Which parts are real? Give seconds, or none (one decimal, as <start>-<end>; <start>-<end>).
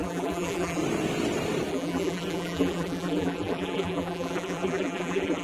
0.8-1.7